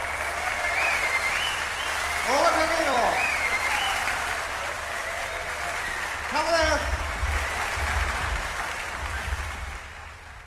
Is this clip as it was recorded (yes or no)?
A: no